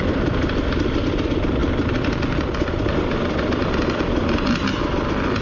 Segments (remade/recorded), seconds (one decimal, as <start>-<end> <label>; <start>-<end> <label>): 0.0-5.4 recorded